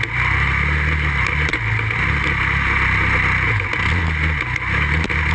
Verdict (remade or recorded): recorded